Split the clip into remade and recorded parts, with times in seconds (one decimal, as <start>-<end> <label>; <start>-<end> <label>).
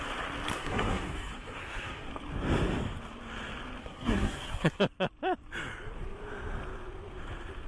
0.0-0.5 recorded; 0.5-2.1 remade; 2.1-3.8 recorded; 3.8-4.8 remade; 4.8-7.7 recorded